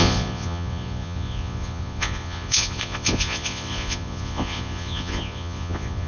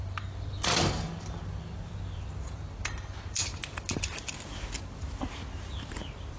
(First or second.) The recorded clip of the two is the second